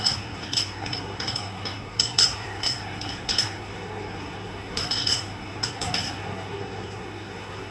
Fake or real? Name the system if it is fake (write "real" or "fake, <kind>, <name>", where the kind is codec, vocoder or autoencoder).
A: fake, codec, SNAC